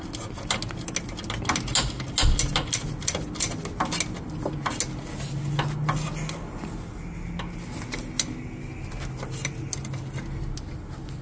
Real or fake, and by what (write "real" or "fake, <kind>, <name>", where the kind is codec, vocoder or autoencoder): real